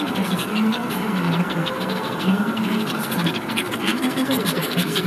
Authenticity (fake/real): fake